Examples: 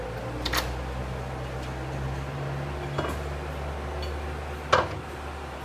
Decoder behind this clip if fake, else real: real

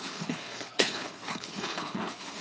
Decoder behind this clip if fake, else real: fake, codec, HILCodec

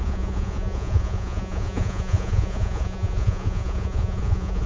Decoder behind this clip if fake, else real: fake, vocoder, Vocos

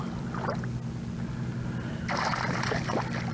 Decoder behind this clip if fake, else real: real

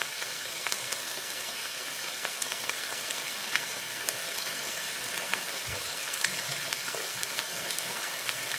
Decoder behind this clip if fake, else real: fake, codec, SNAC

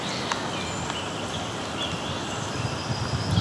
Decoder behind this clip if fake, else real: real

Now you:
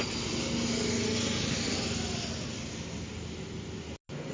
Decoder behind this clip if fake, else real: real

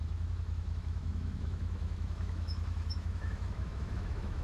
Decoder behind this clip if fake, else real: fake, autoencoder, DAC-VAE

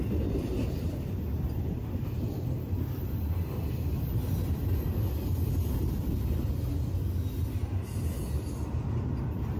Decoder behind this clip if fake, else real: real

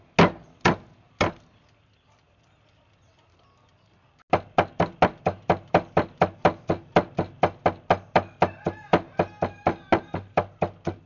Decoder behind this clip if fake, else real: real